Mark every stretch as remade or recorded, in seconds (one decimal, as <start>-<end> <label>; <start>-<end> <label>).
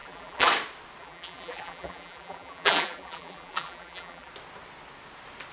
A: 0.0-0.5 remade; 0.5-1.0 recorded; 1.0-4.3 remade; 4.3-5.5 recorded